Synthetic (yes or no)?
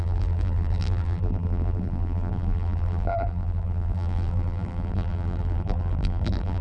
yes